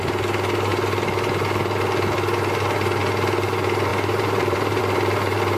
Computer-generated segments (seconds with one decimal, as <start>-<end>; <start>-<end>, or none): 3.9-4.8